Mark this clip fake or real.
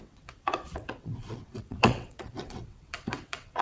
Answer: fake